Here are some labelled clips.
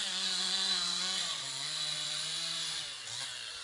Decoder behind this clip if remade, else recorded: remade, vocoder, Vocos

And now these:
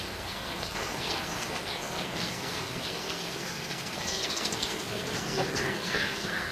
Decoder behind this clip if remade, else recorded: remade, codec, SNAC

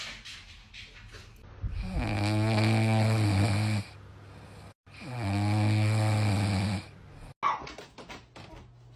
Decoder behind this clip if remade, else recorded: recorded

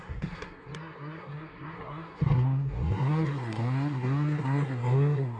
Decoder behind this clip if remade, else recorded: remade, codec, SNAC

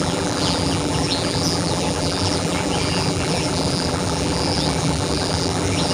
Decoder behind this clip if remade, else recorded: remade, vocoder, BigVGAN v2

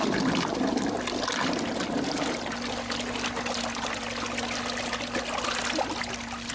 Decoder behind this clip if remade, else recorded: recorded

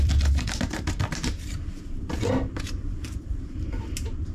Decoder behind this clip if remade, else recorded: remade, vocoder, BigVGAN v2